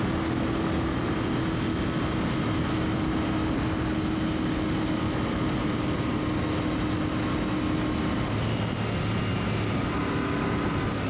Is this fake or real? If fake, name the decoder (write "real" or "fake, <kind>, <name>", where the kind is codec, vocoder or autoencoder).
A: real